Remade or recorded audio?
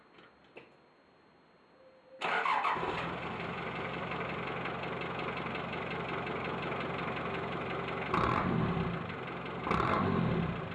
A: recorded